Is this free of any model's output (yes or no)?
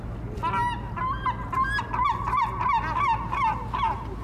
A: yes